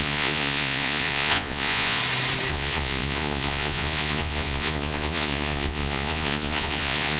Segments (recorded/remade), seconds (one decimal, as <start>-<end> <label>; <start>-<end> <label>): 0.0-2.0 remade; 2.0-2.5 recorded; 2.5-7.2 remade